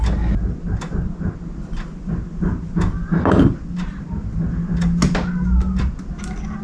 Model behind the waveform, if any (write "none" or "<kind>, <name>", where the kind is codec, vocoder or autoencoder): none